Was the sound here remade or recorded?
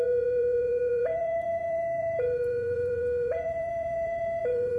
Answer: remade